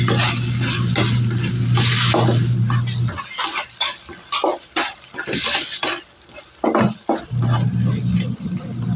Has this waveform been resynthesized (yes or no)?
no